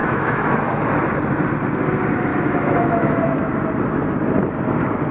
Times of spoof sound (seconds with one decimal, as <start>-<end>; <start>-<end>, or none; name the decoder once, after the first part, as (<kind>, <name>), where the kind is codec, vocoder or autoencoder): 0.0-0.8 (autoencoder, DAC-VAE); 2.3-3.5